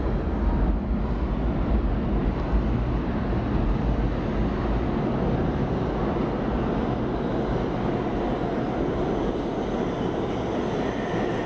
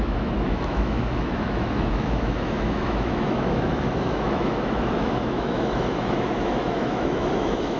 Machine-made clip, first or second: second